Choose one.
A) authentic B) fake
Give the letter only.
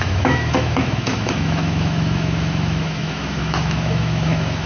B